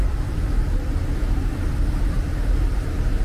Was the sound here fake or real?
fake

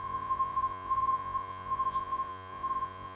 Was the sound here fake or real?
fake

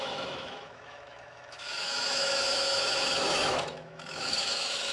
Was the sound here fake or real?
fake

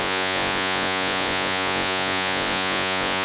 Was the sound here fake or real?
fake